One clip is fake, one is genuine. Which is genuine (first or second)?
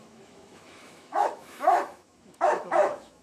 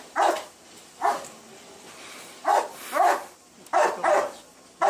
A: second